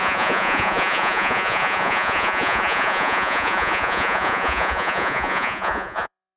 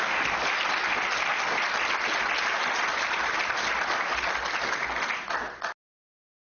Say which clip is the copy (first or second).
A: first